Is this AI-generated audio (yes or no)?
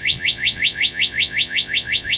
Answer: yes